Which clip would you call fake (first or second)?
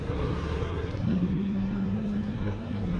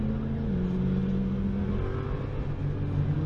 first